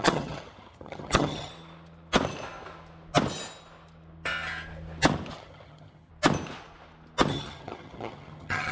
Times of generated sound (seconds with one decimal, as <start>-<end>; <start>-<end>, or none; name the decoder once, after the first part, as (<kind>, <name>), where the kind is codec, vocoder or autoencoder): 0.0-1.5 (vocoder, HiFi-GAN); 5.3-6.1; 7.3-8.7